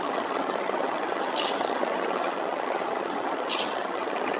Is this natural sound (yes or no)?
no